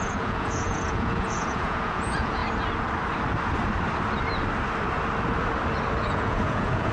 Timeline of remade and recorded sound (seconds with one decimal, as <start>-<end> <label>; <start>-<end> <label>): 0.0-2.4 remade; 2.4-6.0 recorded; 6.0-6.9 remade